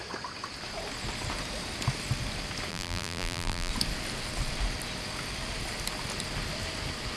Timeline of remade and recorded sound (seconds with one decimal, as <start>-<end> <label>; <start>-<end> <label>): 0.0-2.7 recorded; 2.7-3.7 remade; 3.7-7.2 recorded